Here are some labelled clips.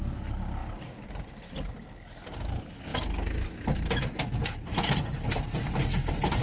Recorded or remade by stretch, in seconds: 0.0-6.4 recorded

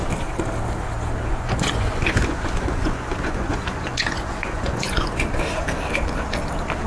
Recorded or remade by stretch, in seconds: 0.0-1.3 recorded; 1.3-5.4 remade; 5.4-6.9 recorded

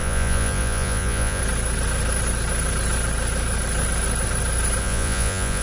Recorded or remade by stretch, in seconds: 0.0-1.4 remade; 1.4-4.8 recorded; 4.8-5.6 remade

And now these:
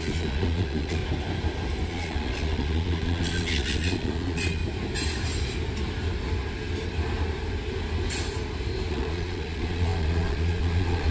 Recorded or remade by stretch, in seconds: 0.0-1.0 remade; 1.0-1.9 recorded; 1.9-4.6 remade; 4.6-8.9 recorded; 8.9-11.1 remade

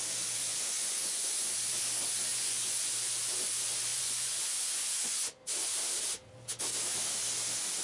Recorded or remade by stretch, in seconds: 0.0-0.5 recorded; 0.5-1.5 remade; 1.5-2.3 recorded; 2.3-2.9 remade; 2.9-3.9 recorded; 3.9-5.4 remade; 5.4-7.8 recorded